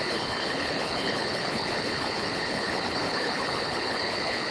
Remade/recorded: remade